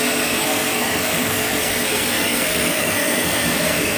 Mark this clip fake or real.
fake